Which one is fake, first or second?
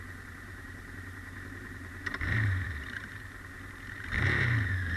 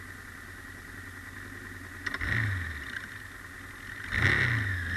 first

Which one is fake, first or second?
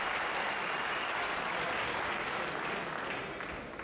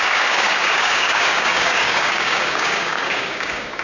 second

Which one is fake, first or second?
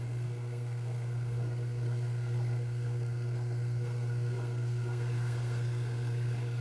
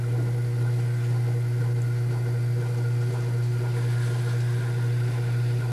first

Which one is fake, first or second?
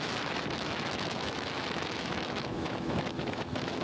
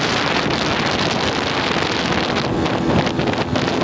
first